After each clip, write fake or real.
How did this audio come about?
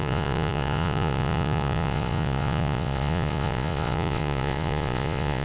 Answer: fake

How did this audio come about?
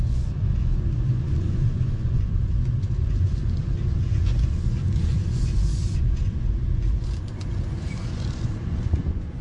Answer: fake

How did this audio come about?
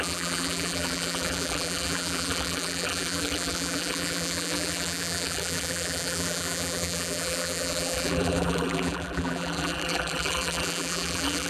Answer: fake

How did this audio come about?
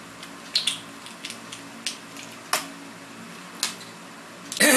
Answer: real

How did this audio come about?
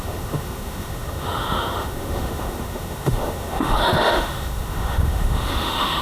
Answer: fake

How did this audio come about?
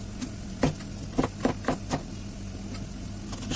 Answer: real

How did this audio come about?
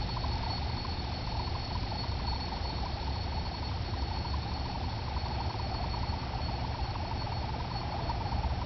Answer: real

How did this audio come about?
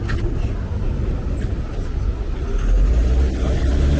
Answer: real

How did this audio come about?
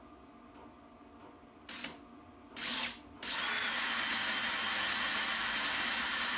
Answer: real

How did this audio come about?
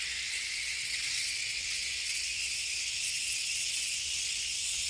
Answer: fake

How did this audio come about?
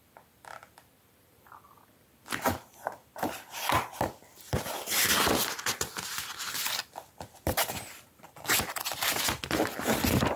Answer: fake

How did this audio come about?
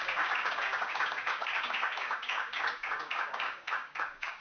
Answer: fake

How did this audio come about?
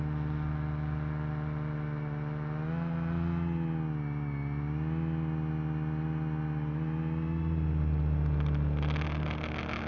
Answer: real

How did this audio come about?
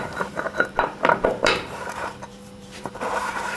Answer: fake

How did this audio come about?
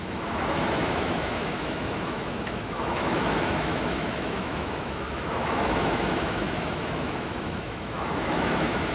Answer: fake